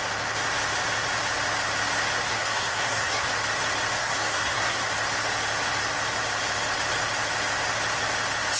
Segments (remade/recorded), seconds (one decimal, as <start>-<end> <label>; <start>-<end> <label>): 0.0-2.3 recorded; 2.3-3.3 remade; 3.3-4.0 recorded; 4.0-4.9 remade; 4.9-8.6 recorded